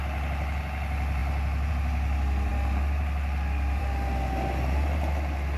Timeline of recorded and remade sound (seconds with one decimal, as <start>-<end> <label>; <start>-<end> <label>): 0.0-5.6 recorded